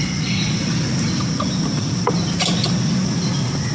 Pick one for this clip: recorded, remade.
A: recorded